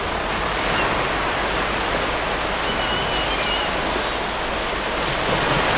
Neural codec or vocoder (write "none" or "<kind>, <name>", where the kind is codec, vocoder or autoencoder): none